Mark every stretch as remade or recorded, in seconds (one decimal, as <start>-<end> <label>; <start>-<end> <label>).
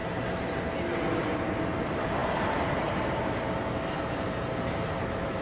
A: 0.0-1.6 recorded; 1.6-5.4 remade